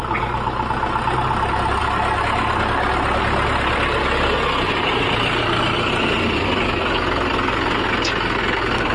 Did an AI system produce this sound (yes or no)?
no